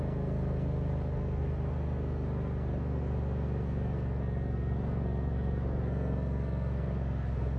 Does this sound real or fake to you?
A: fake